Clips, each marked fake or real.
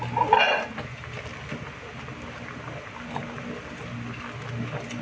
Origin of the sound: real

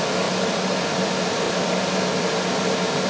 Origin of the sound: real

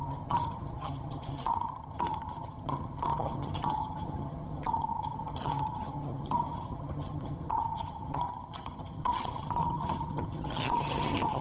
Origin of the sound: fake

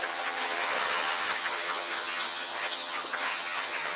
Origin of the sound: fake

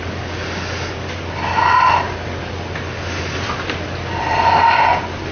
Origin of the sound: real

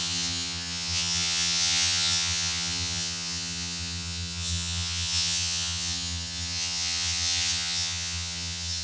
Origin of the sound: fake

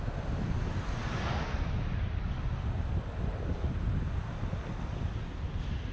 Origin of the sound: real